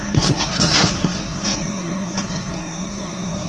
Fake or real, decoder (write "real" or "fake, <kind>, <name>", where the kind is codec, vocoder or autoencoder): fake, codec, SNAC